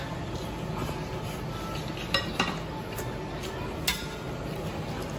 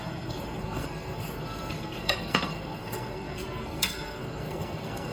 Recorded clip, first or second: first